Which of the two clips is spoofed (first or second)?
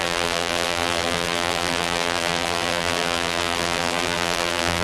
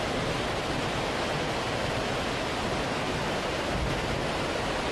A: first